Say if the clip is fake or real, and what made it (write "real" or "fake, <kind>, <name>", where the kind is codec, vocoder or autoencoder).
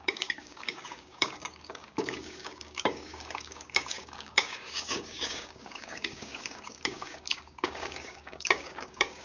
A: fake, codec, DAC